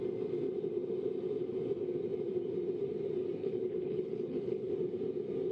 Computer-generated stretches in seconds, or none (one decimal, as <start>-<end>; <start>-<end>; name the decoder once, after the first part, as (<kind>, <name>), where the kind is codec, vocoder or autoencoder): 3.4-4.7 (codec, HILCodec)